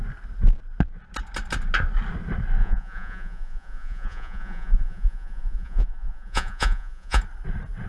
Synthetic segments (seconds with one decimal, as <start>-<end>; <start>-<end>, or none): 2.6-7.2